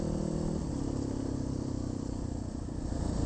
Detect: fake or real real